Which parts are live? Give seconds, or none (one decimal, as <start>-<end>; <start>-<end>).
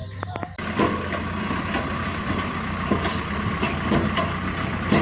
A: 0.0-5.0